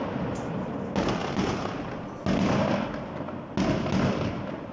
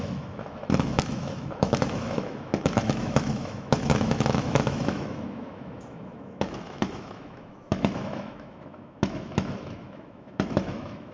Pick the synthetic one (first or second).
second